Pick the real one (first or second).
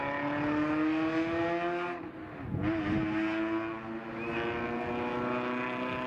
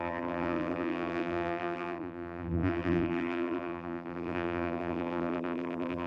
first